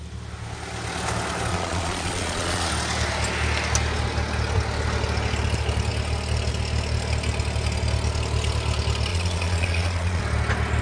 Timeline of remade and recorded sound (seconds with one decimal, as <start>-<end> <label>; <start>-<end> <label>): 0.0-1.5 recorded; 1.5-2.7 remade; 2.7-9.1 recorded; 9.1-10.2 remade; 10.2-10.8 recorded